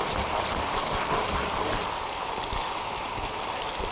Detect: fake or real real